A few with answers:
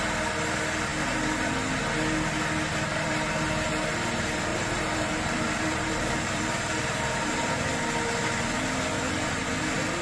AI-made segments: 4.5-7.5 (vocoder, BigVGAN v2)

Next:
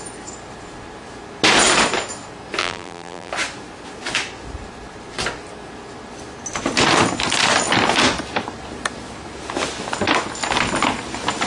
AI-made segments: 2.6-3.3 (vocoder, BigVGAN v2)

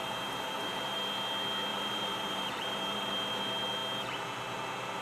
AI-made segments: 0.0-1.0 (vocoder, BigVGAN v2); 1.7-3.4